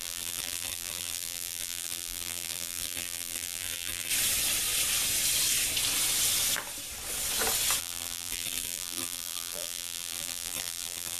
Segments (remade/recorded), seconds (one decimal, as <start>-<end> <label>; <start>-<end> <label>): 0.0-4.1 remade; 4.1-7.8 recorded; 7.8-11.2 remade